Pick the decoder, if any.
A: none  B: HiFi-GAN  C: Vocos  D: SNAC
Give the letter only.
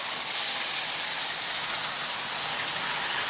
A